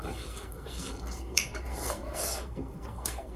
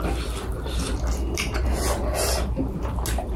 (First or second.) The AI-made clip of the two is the first